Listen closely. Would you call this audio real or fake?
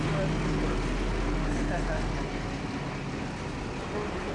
real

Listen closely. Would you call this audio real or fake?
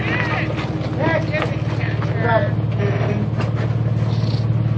real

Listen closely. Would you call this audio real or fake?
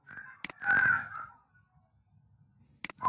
real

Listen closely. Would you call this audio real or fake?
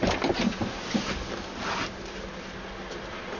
real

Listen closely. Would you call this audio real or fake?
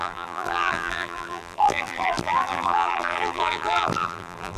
fake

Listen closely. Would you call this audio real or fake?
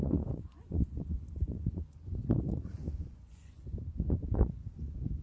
fake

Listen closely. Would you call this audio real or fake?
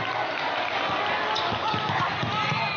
real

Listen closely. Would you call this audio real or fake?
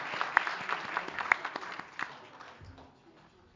real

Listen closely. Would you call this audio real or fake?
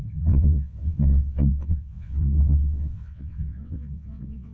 fake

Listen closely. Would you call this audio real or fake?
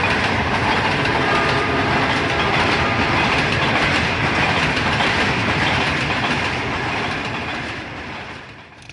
fake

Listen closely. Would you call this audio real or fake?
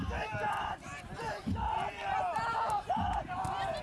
fake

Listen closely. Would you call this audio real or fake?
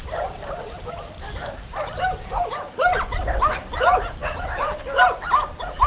real